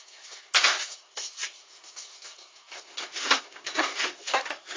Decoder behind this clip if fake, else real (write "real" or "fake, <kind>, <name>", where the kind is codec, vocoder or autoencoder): fake, codec, SNAC